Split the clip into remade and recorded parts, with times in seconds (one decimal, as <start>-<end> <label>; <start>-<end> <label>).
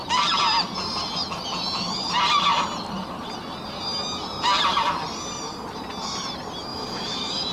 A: 0.0-6.7 recorded; 6.7-7.5 remade